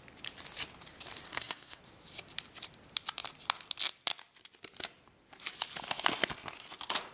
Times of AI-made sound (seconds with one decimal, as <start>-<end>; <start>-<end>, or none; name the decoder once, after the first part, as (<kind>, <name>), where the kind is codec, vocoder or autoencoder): 1.3-1.8 (codec, SNAC)